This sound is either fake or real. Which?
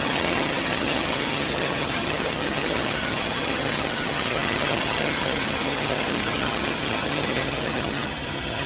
fake